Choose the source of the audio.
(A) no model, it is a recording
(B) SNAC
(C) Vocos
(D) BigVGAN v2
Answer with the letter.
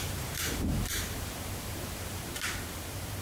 D